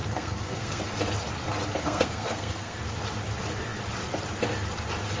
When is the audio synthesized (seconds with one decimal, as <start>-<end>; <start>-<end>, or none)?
0.0-0.8; 1.8-2.8